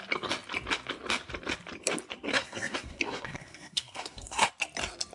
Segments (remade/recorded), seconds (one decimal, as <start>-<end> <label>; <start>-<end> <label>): 0.0-2.3 recorded; 2.3-4.5 remade; 4.5-5.1 recorded